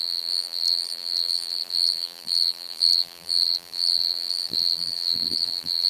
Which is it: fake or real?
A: fake